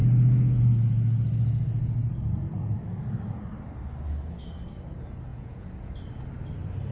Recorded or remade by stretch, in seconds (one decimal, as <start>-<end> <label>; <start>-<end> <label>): 0.0-5.3 recorded; 5.3-5.9 remade; 5.9-6.9 recorded